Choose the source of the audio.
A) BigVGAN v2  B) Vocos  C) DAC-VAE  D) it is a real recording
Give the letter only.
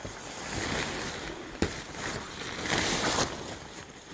D